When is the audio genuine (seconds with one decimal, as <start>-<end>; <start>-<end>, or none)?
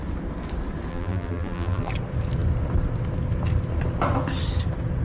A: 0.0-0.9; 1.9-5.0